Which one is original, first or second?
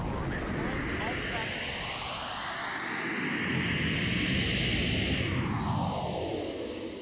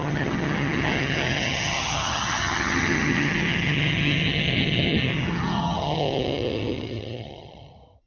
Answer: first